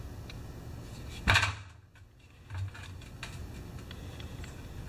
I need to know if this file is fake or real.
real